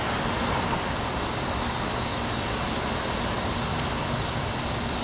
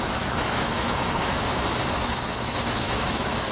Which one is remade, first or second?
second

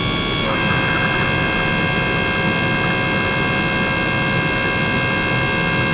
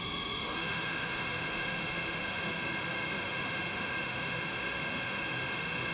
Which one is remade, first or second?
second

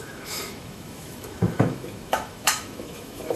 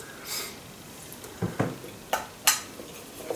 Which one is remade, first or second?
first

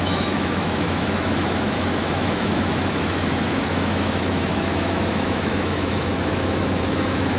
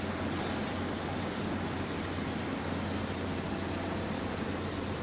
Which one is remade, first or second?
first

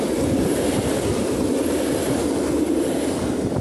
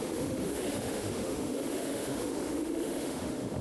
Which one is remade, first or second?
second